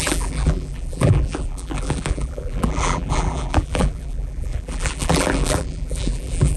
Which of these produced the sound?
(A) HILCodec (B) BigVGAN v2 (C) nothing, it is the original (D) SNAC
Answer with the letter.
B